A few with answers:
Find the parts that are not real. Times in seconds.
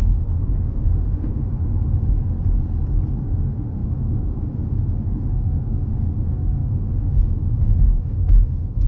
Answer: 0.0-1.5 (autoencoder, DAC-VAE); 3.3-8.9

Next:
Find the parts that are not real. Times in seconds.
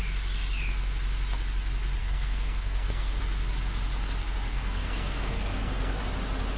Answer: 2.0-3.2 (codec, SNAC); 4.5-6.0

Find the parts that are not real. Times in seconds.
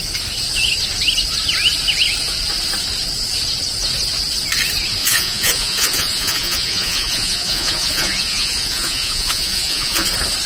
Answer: 5.0-10.1 (vocoder, Vocos)